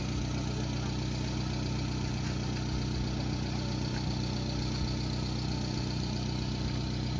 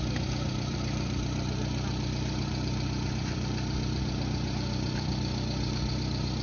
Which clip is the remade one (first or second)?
second